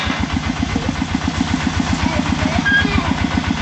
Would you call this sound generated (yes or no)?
no